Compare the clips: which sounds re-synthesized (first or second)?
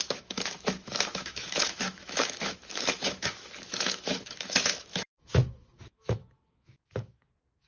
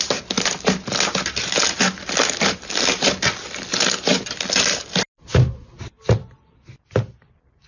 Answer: first